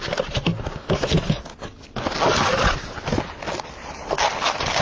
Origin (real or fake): real